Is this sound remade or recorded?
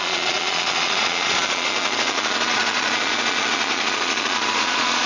remade